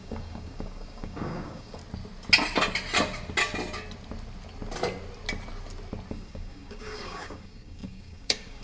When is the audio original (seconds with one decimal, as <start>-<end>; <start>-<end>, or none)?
1.8-6.1